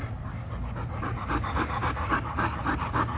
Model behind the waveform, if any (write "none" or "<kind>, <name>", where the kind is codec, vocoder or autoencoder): none